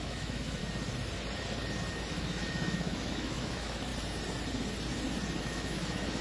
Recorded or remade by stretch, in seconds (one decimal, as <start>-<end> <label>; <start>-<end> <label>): 0.0-0.6 remade; 0.6-2.1 recorded; 2.1-3.9 remade; 3.9-5.4 recorded; 5.4-6.2 remade